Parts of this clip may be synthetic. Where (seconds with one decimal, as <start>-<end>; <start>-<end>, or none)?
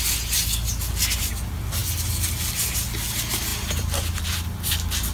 3.5-4.2